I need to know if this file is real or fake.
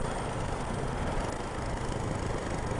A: real